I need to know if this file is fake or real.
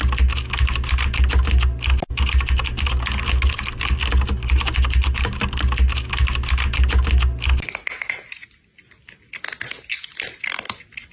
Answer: real